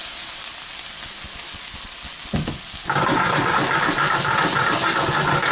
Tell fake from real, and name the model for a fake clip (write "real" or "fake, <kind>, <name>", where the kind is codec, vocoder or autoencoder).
real